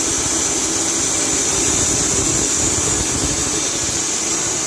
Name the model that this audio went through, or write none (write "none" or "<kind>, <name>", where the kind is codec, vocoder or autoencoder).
vocoder, BigVGAN v2